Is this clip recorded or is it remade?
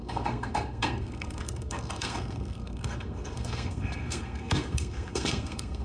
remade